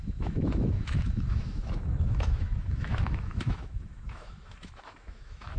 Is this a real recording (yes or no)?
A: no